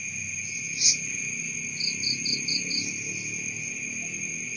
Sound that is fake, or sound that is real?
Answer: real